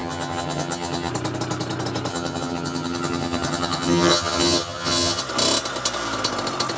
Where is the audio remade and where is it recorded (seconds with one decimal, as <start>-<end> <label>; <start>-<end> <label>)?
0.0-1.1 remade; 1.1-2.1 recorded; 2.1-5.2 remade; 5.2-6.8 recorded